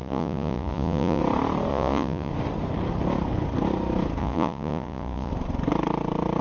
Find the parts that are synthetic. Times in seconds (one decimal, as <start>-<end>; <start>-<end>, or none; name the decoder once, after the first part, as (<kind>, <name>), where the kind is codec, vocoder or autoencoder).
0.0-1.2 (vocoder, Vocos); 1.7-2.3; 4.2-5.3